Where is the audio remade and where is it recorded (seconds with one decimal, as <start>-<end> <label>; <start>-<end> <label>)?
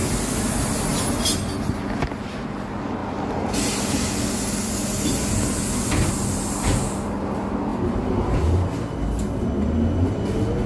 0.0-10.7 recorded